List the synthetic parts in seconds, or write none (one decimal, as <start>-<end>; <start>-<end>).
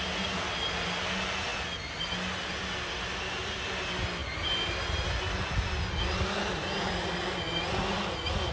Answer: none